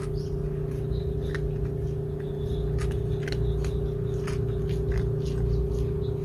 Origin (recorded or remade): recorded